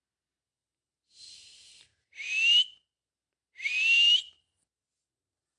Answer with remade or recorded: recorded